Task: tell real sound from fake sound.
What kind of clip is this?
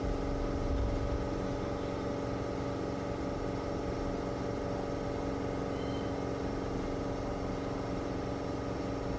real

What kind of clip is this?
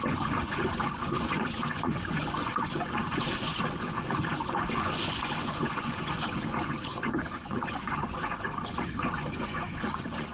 fake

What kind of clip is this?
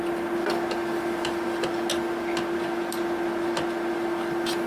real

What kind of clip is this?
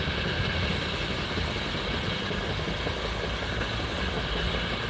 real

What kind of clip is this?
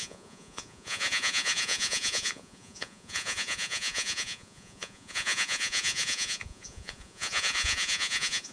fake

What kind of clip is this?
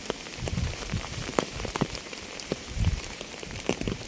fake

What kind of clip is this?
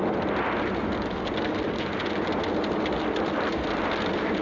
real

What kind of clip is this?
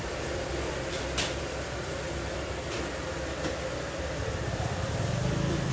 fake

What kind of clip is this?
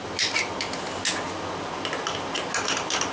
real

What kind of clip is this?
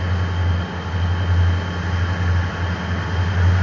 real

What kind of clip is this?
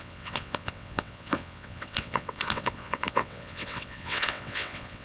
fake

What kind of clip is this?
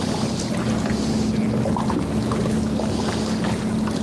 real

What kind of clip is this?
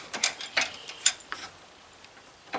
real